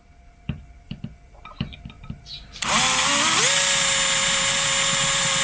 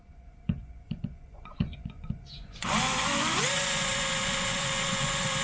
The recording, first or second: first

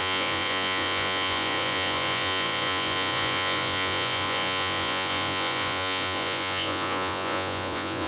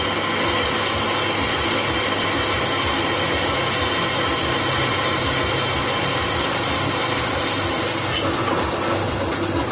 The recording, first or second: second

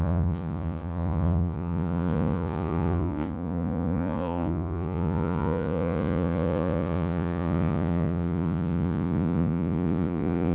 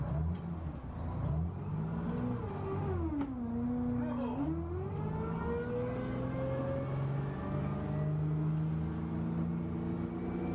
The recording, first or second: second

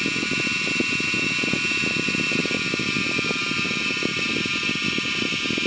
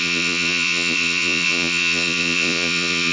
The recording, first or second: first